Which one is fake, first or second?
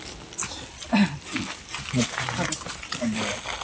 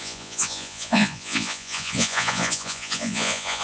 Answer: second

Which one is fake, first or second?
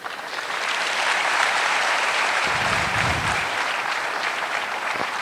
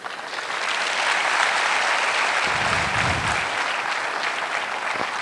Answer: first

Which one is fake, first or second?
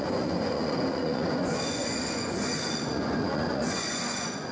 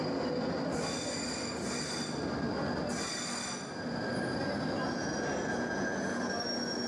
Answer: first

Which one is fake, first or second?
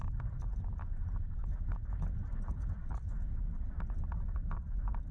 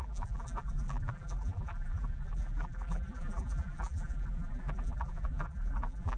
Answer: second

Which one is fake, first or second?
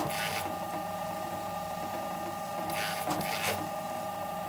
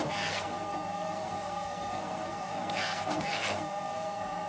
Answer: second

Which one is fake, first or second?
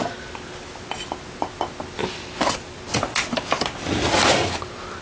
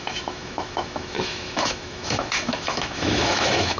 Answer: second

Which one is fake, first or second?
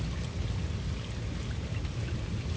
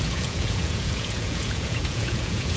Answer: second